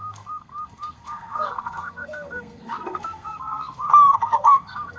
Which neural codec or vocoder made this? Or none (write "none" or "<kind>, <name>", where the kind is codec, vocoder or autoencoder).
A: codec, SNAC